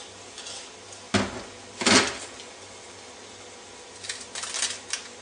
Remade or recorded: recorded